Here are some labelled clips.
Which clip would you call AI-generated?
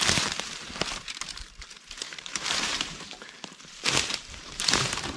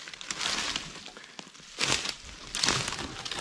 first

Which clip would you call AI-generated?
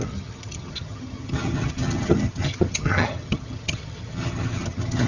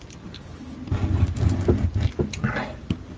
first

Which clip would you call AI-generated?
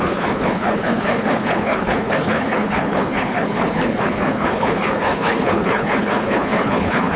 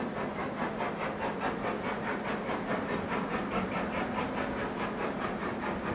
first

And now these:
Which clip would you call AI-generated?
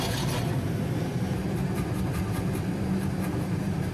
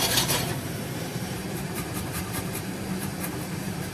second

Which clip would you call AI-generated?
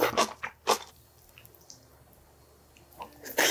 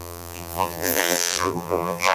second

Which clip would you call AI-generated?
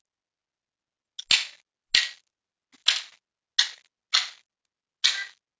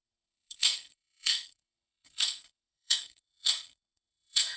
second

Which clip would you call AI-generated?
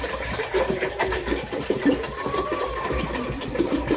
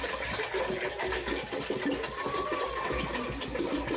first